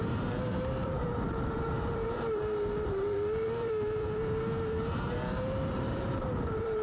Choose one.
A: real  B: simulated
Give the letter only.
B